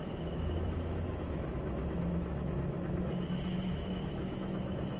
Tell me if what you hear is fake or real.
fake